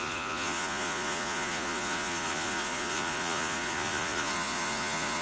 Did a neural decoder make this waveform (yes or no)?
yes